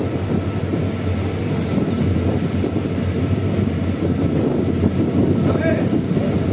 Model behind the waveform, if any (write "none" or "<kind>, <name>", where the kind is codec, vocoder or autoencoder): none